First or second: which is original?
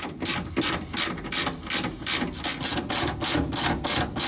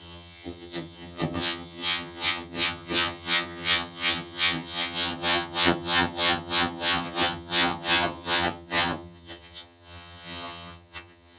first